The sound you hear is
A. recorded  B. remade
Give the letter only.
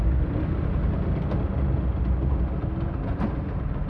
A